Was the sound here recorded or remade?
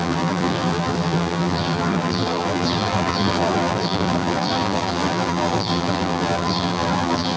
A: remade